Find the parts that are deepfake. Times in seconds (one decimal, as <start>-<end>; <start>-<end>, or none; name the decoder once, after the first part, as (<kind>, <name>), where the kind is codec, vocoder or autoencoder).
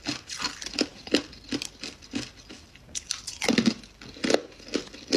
none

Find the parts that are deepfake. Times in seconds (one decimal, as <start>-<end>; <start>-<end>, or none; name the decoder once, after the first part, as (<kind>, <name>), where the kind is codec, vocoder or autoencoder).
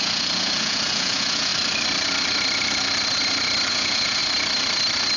0.0-1.5 (vocoder, Vocos); 3.7-4.2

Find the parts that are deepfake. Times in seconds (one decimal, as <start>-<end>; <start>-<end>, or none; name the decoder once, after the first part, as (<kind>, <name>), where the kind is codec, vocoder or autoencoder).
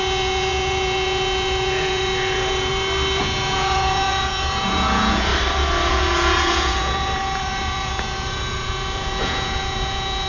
0.0-2.7 (vocoder, Vocos); 3.2-5.3; 5.9-10.3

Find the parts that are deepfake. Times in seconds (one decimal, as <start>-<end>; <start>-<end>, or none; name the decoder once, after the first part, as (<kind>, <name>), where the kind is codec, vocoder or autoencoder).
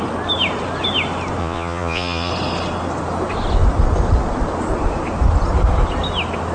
1.4-2.3 (vocoder, Vocos)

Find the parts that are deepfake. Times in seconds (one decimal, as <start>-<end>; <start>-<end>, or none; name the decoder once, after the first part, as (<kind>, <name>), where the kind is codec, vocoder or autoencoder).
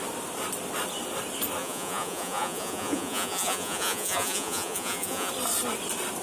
1.6-5.3 (vocoder, Vocos)